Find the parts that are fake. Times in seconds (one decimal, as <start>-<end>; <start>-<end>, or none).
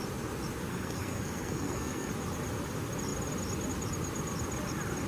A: 0.7-2.1